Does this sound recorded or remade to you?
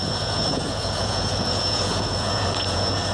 remade